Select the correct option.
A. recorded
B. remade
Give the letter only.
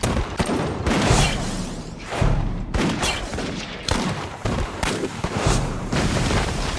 B